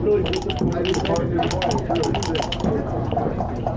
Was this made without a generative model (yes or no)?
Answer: yes